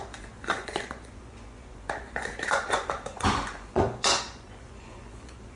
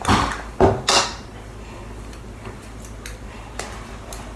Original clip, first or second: second